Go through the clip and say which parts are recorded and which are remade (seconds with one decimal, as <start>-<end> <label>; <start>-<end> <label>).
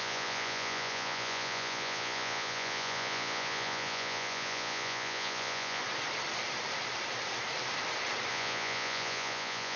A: 0.0-5.8 remade; 5.8-8.3 recorded; 8.3-9.8 remade